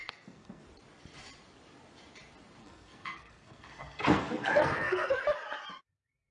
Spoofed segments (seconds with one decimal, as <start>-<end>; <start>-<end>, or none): 0.0-0.6; 2.6-5.2